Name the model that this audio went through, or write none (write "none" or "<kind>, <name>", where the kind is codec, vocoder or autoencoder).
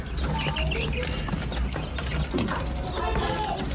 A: none